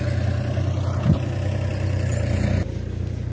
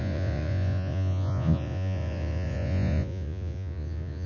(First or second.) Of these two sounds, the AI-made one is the second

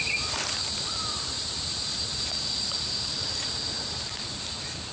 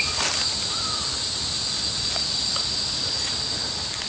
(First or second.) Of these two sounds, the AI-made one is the first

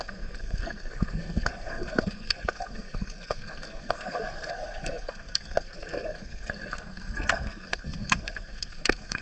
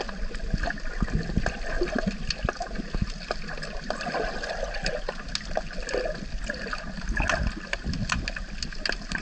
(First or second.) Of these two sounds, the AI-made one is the first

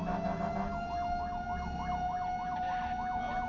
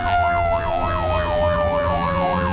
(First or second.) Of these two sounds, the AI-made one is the second